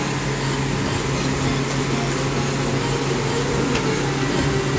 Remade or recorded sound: recorded